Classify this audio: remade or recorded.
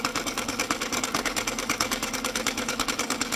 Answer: remade